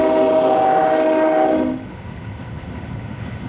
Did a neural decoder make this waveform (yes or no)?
yes